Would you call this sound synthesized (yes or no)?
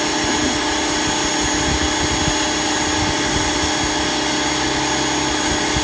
no